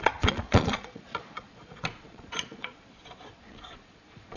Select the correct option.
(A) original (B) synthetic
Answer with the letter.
B